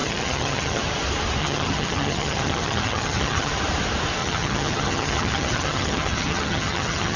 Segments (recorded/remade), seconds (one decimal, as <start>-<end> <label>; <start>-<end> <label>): 0.0-0.8 remade; 0.8-1.4 recorded; 1.4-3.5 remade; 3.5-4.2 recorded; 4.2-7.2 remade